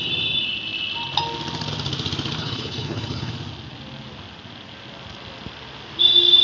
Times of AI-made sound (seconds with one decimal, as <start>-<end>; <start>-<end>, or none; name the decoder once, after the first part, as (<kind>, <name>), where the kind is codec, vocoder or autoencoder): 2.4-3.3 (codec, HILCodec)